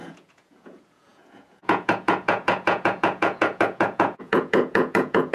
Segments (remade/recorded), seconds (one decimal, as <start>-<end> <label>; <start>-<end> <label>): 0.0-5.3 remade